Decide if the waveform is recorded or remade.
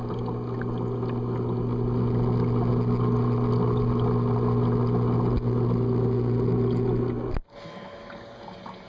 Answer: recorded